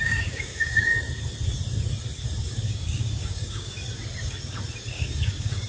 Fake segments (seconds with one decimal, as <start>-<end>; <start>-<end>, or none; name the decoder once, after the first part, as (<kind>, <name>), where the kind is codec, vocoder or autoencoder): 0.0-0.9 (codec, DAC); 2.4-3.8; 4.9-5.7